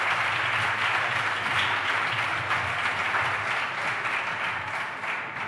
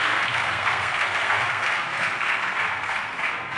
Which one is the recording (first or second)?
first